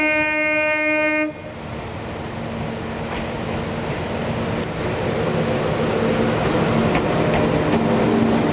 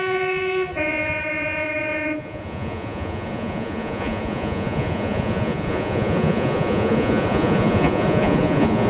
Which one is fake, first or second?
second